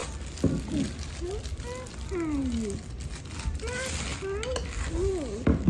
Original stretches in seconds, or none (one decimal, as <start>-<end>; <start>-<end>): 0.0-5.7